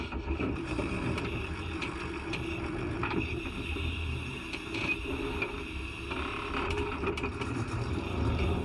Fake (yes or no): yes